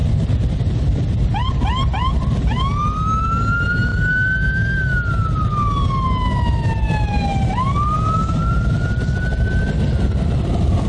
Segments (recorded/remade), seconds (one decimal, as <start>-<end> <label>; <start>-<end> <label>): 0.0-10.9 recorded